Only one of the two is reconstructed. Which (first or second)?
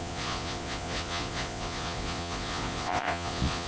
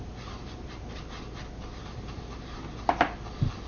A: first